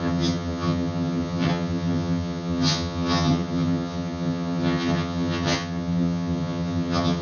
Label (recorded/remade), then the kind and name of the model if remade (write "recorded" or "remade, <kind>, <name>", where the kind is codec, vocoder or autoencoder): remade, vocoder, HiFi-GAN